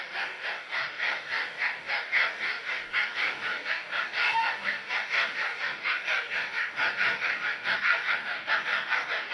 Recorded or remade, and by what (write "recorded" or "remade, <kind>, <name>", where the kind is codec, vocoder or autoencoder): remade, codec, DAC